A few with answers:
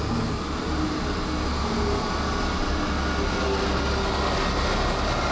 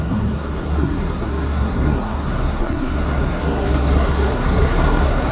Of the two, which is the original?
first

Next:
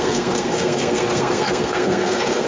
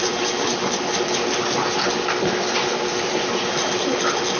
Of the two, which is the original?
second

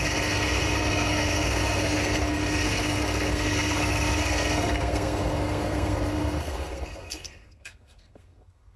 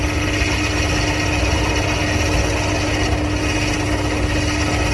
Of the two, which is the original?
second